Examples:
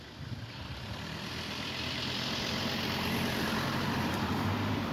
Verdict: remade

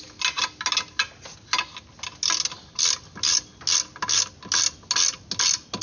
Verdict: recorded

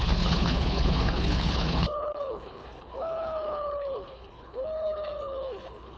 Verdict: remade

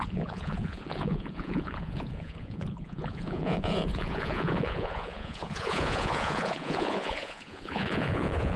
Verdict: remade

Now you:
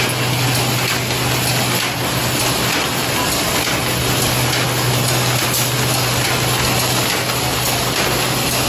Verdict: recorded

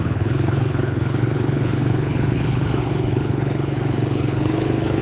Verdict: remade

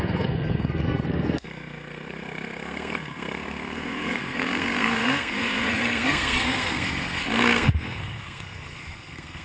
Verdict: remade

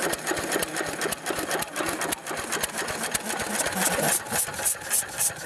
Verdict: recorded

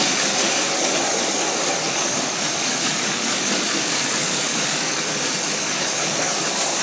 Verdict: remade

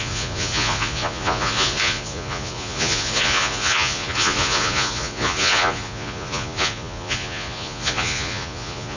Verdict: remade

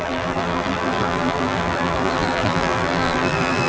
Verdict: remade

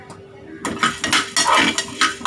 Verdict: recorded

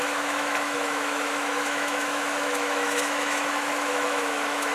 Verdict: remade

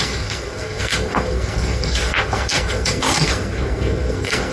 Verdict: remade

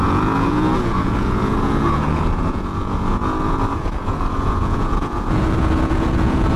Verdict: remade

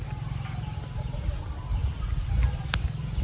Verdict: recorded